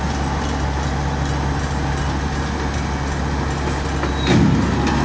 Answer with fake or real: real